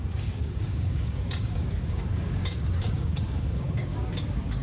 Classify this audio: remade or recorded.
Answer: remade